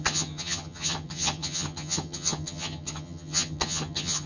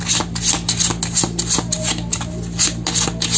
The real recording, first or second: second